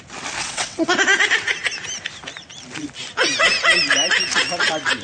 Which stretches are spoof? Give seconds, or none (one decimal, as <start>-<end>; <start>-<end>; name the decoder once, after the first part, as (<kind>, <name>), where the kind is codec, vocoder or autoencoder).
0.4-1.0 (vocoder, WaveNeXt)